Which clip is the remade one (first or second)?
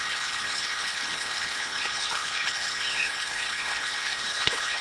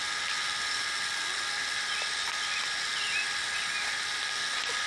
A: first